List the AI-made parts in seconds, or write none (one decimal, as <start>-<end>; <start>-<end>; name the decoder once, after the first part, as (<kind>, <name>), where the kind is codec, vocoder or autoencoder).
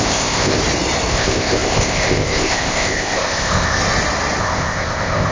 0.0-0.6 (codec, ZipCodec); 1.1-3.8; 4.4-5.3